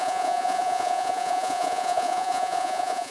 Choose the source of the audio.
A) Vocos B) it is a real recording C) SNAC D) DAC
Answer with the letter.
A